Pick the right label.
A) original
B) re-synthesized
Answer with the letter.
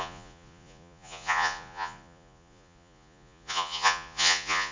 B